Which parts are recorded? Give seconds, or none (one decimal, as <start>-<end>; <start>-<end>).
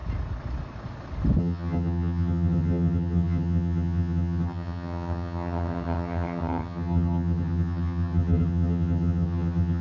0.0-1.4